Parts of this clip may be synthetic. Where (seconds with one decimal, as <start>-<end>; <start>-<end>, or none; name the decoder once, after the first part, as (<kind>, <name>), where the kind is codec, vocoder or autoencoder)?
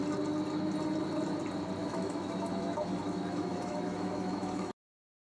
1.8-5.3 (autoencoder, DAC-VAE)